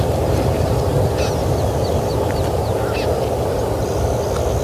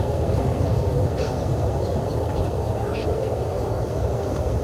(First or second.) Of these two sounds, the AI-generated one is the second